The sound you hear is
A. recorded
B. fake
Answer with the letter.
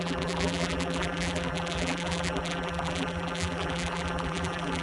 B